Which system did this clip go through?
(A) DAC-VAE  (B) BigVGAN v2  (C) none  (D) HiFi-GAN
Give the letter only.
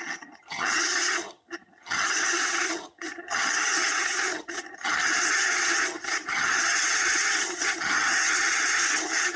D